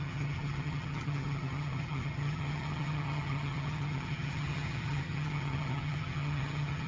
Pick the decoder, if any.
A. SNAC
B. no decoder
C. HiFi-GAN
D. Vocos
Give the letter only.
C